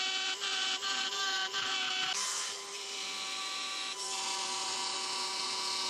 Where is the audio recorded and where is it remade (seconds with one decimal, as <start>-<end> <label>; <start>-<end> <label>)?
0.0-5.9 recorded